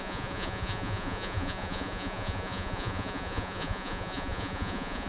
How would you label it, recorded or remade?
remade